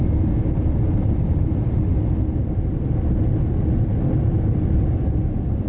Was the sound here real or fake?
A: real